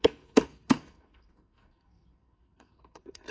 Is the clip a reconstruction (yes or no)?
yes